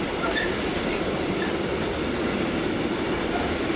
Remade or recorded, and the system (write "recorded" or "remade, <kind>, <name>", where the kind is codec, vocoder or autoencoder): remade, vocoder, BigVGAN v2